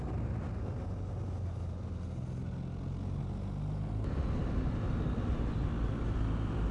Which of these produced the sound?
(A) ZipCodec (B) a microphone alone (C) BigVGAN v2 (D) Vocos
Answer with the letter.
B